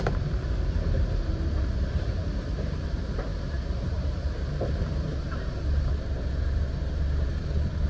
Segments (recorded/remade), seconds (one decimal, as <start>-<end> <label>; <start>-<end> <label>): 0.0-7.9 remade